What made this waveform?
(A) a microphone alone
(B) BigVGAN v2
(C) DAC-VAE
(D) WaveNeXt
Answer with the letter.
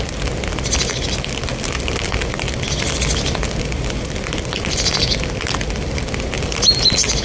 A